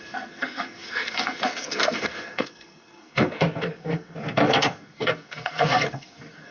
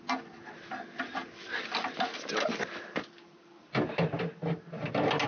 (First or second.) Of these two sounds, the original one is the second